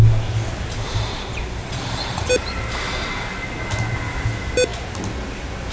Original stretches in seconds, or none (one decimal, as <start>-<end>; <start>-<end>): 0.0-1.6; 2.3-5.7